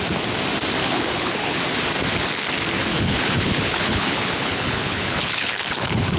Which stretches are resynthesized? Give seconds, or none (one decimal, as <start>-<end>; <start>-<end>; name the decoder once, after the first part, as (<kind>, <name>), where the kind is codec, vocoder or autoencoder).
0.8-1.6 (codec, HILCodec); 2.9-6.2